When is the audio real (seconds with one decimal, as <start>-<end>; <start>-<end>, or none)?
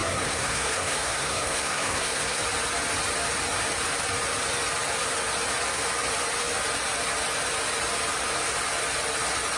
2.4-9.6